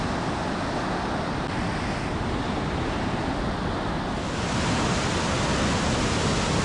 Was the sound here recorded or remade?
recorded